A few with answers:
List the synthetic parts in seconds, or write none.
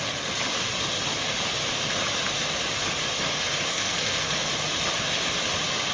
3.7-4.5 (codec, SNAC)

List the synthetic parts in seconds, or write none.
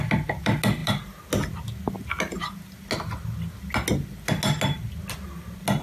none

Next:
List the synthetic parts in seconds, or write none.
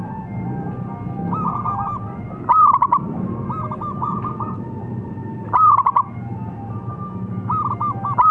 none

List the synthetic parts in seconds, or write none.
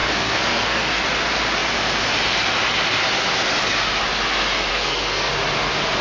0.0-1.0 (codec, SNAC); 4.7-5.3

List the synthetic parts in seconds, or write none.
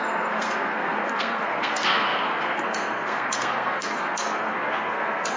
0.0-5.4 (codec, SNAC)